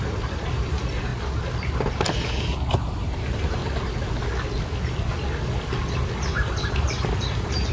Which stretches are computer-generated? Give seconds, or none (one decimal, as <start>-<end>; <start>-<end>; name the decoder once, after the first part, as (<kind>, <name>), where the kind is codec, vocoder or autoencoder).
0.0-1.1 (vocoder, BigVGAN v2); 2.8-3.6; 6.7-7.7